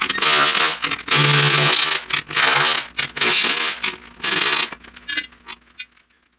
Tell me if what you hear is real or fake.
real